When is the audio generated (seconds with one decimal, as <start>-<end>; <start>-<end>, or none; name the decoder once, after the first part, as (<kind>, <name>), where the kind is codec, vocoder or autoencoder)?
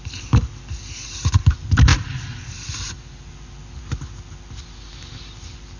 1.9-3.3 (vocoder, BigVGAN v2)